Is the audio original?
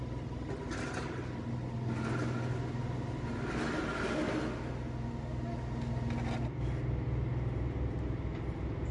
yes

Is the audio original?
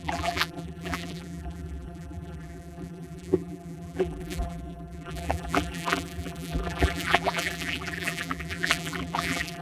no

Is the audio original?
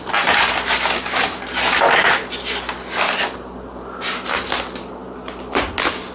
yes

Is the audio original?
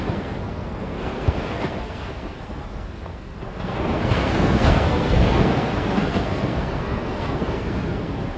no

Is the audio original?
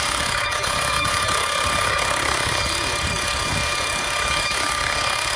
no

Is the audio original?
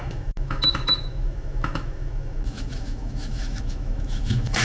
no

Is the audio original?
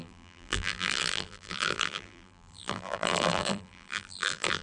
no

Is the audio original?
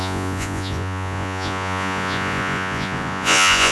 no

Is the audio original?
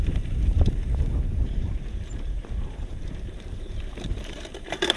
no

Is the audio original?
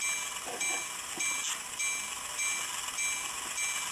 yes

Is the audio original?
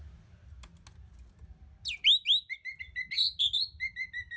yes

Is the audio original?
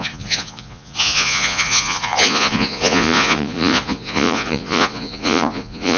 no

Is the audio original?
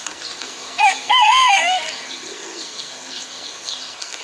no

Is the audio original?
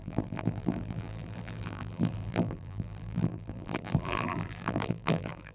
no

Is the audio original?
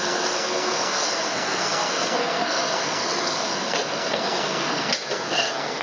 no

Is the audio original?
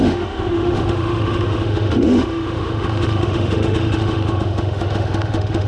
no